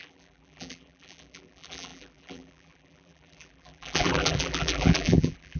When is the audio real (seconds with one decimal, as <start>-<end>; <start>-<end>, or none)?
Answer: none